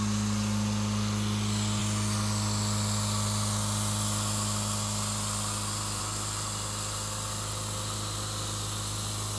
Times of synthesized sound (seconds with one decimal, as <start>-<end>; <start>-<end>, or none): none